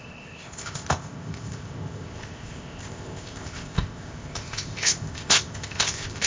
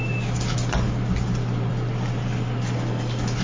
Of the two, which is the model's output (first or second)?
first